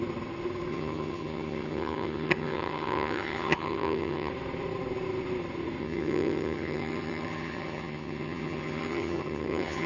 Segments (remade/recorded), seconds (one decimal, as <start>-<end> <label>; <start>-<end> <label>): 0.0-0.7 recorded; 0.7-4.3 remade; 4.3-5.8 recorded; 5.8-9.9 remade